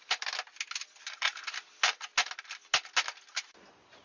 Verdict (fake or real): real